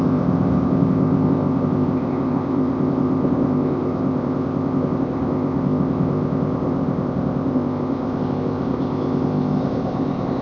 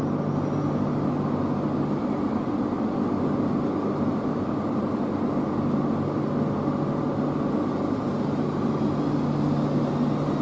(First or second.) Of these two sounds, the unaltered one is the second